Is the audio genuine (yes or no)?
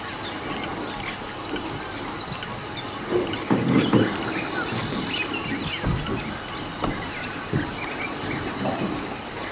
yes